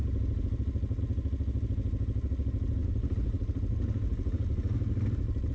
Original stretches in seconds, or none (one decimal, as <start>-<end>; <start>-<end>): 0.0-5.5